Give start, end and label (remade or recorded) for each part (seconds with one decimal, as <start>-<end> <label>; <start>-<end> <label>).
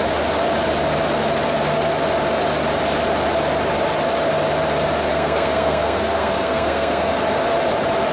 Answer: 0.0-5.1 recorded; 5.1-7.1 remade; 7.1-8.1 recorded